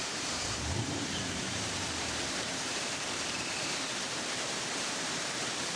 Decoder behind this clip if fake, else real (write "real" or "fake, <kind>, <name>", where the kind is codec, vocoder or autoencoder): fake, vocoder, BigVGAN v2